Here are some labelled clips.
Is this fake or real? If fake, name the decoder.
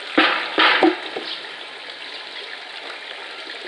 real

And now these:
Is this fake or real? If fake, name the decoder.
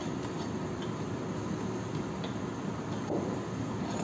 real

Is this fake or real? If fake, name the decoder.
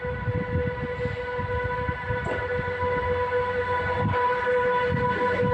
real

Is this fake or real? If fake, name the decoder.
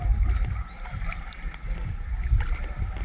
real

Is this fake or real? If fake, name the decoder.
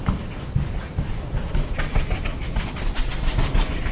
real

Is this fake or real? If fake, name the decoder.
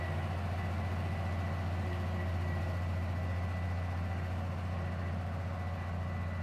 real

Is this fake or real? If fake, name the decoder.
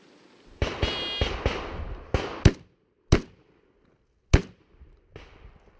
real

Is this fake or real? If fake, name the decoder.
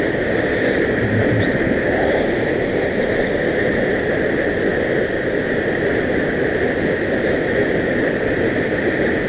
real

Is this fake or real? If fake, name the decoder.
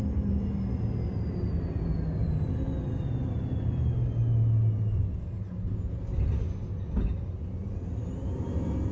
real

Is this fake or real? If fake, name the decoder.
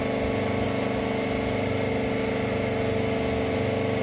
real